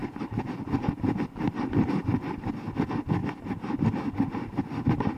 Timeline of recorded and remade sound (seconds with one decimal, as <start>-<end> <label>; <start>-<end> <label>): 0.0-5.2 recorded